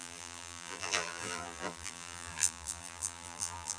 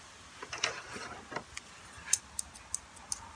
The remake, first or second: first